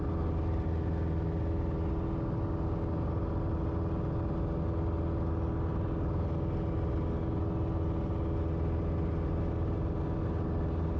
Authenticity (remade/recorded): recorded